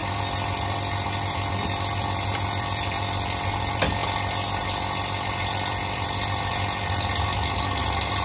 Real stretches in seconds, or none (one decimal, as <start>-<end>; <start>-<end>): 0.0-1.3; 4.0-5.3